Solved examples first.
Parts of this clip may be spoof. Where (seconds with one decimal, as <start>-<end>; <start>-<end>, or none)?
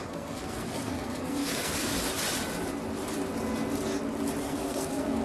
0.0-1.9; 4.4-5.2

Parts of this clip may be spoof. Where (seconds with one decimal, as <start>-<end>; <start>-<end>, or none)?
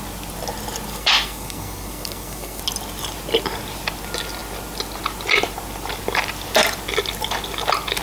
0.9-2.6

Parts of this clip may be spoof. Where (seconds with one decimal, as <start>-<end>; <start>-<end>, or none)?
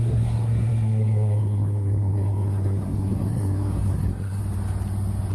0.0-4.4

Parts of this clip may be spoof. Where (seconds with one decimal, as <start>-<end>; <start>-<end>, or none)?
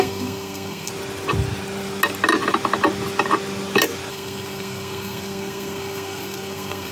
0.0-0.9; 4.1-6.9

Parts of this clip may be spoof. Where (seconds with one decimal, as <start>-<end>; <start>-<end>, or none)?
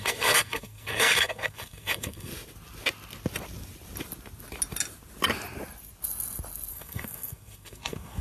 0.0-2.3; 6.7-8.2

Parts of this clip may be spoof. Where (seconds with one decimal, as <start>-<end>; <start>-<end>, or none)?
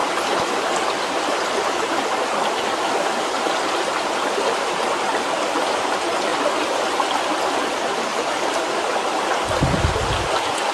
none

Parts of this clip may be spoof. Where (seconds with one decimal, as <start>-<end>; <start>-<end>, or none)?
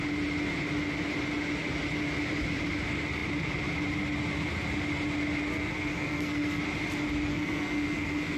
5.5-6.6; 7.3-8.4